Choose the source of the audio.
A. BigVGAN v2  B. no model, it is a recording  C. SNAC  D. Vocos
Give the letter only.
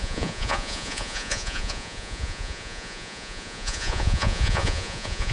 D